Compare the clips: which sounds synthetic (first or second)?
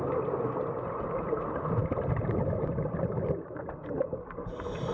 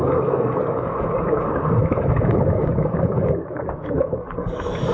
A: second